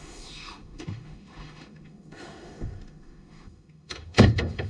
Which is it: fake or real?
fake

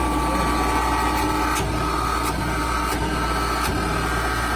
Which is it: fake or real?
real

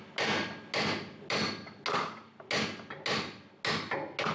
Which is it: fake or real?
real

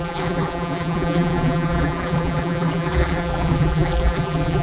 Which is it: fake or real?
fake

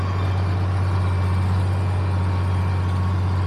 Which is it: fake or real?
real